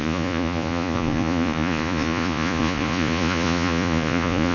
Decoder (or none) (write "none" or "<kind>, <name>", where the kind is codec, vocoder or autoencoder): vocoder, Vocos